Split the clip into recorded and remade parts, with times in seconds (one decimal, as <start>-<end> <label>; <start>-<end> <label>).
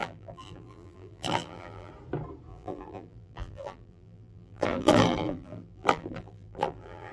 0.0-1.9 remade; 1.9-2.5 recorded; 2.5-7.1 remade